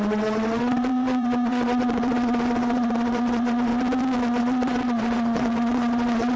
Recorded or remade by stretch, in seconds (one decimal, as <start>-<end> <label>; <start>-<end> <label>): 0.0-3.7 remade; 3.7-4.4 recorded; 4.4-6.4 remade